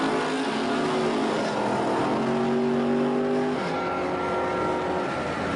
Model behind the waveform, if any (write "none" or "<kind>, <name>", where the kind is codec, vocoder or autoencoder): none